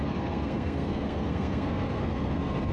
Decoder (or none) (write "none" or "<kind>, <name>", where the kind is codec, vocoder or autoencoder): codec, SNAC